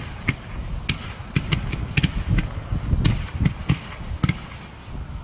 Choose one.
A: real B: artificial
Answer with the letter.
A